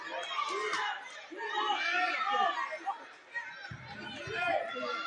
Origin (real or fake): real